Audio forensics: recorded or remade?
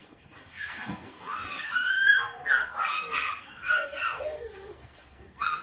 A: remade